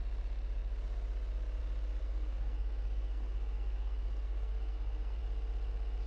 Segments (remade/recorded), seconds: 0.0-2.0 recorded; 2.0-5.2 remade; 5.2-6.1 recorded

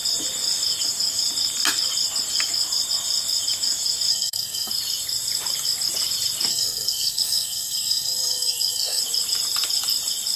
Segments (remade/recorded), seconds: 0.0-4.1 recorded; 4.1-4.7 remade; 4.7-6.5 recorded; 6.5-9.0 remade; 9.0-10.4 recorded

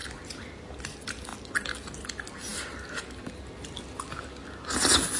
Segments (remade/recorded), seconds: 0.0-5.2 recorded

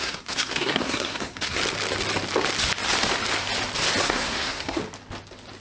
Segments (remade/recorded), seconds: 0.0-1.6 remade; 1.6-4.0 recorded; 4.0-4.8 remade; 4.8-5.6 recorded

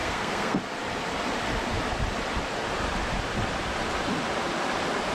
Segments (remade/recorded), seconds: 0.0-0.6 remade; 0.6-5.1 recorded

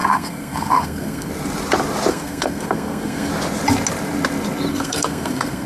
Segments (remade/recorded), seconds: 0.0-1.3 remade; 1.3-2.1 recorded; 2.1-3.3 remade; 3.3-4.7 recorded; 4.7-5.7 remade